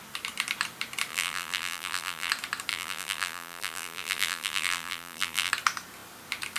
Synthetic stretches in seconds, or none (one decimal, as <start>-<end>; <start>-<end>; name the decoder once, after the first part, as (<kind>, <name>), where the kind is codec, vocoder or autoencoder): 1.1-2.3 (vocoder, BigVGAN v2); 2.7-5.5